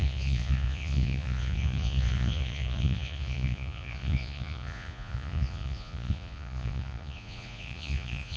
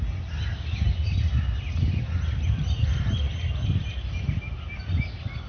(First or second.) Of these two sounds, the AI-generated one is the first